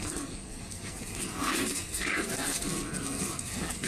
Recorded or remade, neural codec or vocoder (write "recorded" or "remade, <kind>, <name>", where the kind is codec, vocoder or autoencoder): remade, codec, SNAC